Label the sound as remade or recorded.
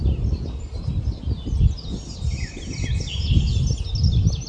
recorded